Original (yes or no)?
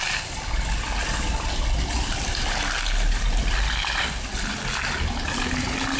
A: yes